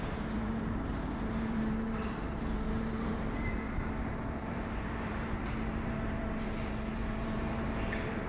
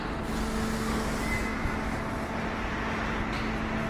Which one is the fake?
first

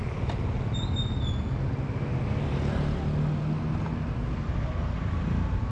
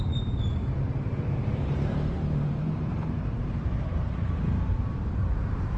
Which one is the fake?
second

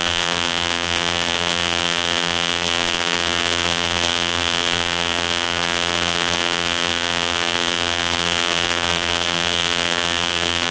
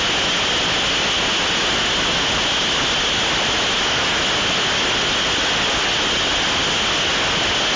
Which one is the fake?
first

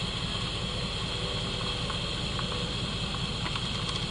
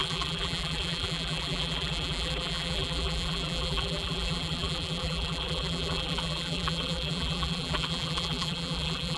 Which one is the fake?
second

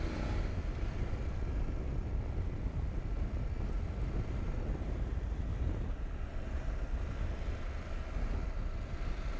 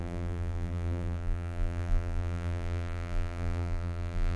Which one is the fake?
second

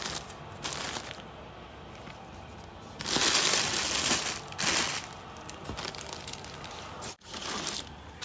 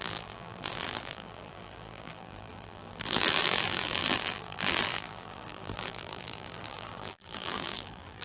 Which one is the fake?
second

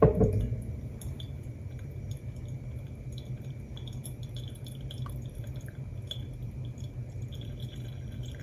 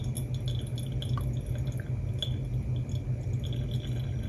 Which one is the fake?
first